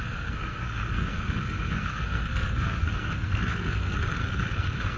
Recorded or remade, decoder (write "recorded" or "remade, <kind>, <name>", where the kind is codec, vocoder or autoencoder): remade, codec, SNAC